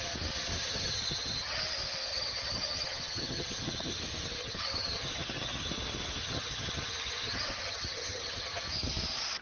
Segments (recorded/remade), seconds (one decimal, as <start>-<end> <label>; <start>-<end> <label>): 0.0-0.6 recorded; 0.6-1.6 remade; 1.6-2.1 recorded; 2.1-4.0 remade; 4.0-4.4 recorded; 4.4-5.7 remade; 5.7-6.2 recorded; 6.2-8.6 remade; 8.6-9.4 recorded